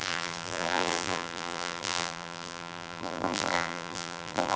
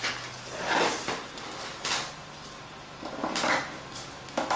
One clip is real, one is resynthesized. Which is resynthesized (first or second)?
first